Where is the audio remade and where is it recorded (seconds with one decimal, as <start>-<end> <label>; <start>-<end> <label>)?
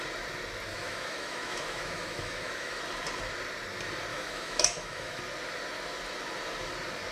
0.0-0.7 recorded; 0.7-2.8 remade; 2.8-4.1 recorded; 4.1-5.2 remade; 5.2-7.1 recorded